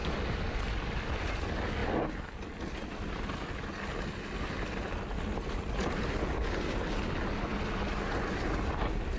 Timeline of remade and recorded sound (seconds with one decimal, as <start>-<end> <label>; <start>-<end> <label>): 0.0-9.2 recorded